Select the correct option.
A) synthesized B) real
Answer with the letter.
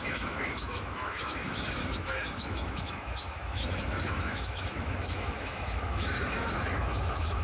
A